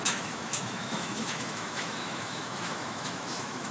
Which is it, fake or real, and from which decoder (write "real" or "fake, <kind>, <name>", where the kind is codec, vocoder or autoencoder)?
fake, autoencoder, DAC-VAE